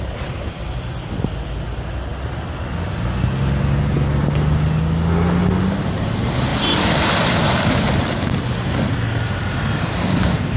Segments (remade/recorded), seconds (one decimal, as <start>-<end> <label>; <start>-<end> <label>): 0.0-6.5 recorded; 6.5-8.5 remade; 8.5-10.6 recorded